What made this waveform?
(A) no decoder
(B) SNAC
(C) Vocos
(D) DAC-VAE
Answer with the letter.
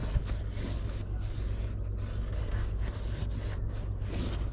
A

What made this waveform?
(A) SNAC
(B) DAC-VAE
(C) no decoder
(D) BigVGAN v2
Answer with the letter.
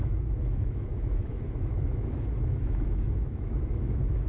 B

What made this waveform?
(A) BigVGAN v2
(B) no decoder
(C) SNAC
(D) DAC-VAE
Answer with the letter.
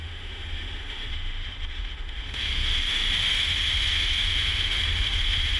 D